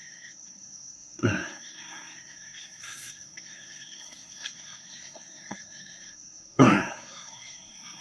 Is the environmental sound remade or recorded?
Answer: remade